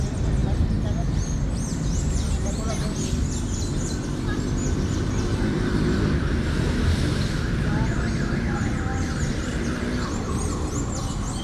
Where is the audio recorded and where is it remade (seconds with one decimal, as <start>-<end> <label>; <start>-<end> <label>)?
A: 0.0-11.4 recorded